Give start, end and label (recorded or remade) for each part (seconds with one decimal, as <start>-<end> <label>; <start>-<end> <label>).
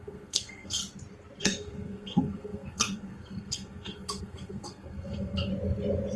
0.0-0.8 remade; 0.8-1.4 recorded; 1.4-5.5 remade; 5.5-6.2 recorded